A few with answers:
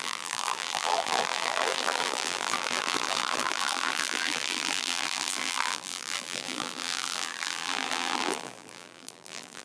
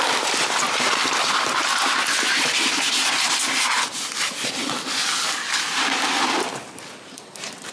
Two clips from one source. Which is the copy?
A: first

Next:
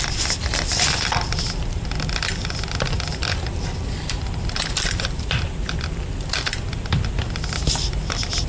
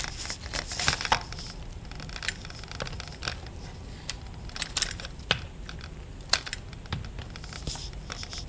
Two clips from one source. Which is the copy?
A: first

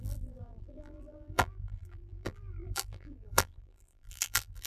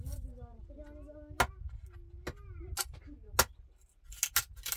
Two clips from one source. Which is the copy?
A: first